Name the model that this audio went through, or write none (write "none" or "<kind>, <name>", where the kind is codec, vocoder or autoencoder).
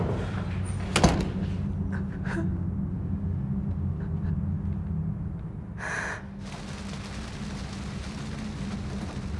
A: none